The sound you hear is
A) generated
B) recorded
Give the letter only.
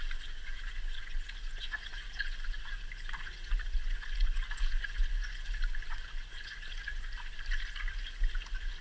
B